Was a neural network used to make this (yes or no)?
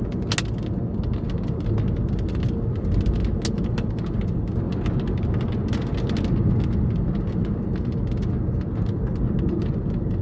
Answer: no